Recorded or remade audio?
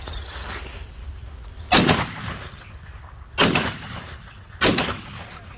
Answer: recorded